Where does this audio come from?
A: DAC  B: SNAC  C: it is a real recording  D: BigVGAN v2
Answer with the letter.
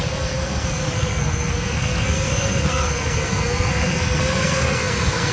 B